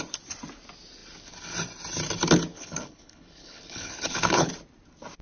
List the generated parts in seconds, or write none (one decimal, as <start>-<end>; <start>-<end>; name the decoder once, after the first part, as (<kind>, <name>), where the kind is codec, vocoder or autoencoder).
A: 2.5-4.5 (codec, HILCodec)